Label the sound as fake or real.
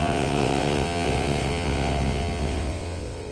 fake